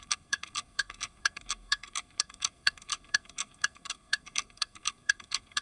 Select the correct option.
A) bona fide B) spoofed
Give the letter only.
B